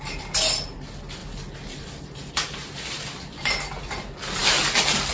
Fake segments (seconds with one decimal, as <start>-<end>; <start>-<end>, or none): none